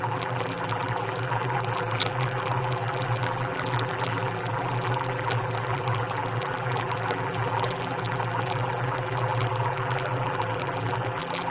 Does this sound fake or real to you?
fake